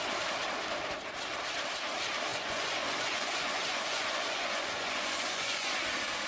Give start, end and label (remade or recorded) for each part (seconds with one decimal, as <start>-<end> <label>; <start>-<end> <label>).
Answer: 0.0-2.3 recorded; 2.3-5.7 remade; 5.7-6.3 recorded